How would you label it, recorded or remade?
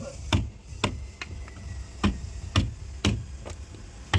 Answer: recorded